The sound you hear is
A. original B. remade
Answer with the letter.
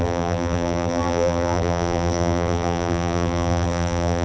B